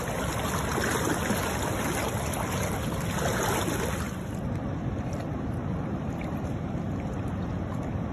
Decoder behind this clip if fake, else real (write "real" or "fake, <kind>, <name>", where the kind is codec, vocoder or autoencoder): real